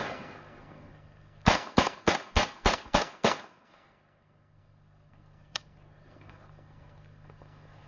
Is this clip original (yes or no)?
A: no